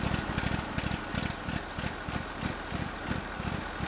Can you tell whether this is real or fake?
real